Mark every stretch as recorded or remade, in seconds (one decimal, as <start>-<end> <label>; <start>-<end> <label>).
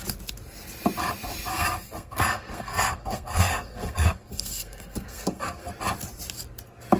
0.0-1.5 recorded; 1.5-5.7 remade; 5.7-7.0 recorded